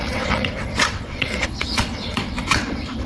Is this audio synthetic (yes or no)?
yes